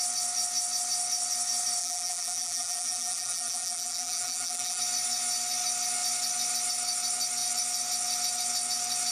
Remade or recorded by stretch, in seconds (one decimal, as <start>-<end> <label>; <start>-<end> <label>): 0.0-1.8 recorded; 1.8-4.8 remade; 4.8-9.1 recorded